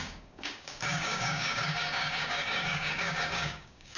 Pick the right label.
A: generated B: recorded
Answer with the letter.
A